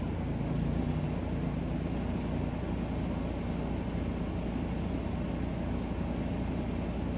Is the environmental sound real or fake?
real